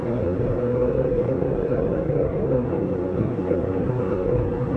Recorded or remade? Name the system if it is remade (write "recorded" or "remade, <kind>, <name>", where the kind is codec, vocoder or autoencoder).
remade, codec, SNAC